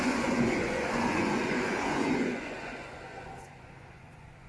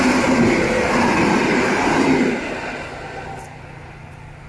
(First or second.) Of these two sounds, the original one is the second